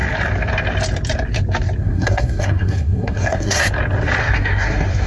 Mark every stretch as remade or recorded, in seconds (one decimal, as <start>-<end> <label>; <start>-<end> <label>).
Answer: 0.0-1.8 recorded; 1.8-3.7 remade; 3.7-4.2 recorded; 4.2-5.1 remade